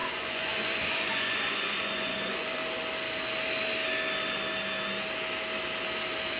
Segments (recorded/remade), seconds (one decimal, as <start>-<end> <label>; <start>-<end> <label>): 0.0-2.6 remade; 2.6-6.4 recorded